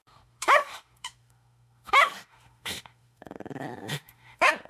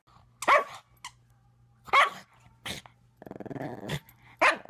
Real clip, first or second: second